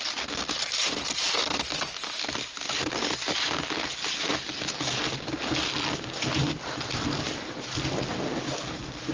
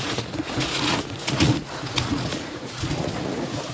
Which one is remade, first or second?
second